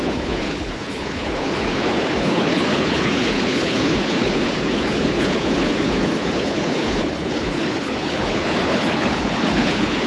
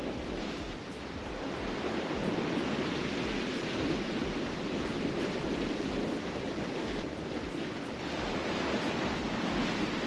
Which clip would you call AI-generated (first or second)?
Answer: first